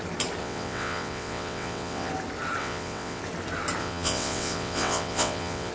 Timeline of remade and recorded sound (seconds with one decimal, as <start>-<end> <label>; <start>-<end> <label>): 0.0-0.4 recorded; 0.4-2.1 remade; 2.1-2.6 recorded; 2.6-3.2 remade; 3.2-3.8 recorded; 3.8-5.7 remade